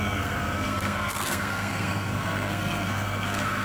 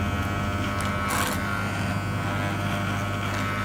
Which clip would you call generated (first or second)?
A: first